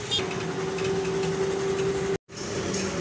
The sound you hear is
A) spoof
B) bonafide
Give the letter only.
B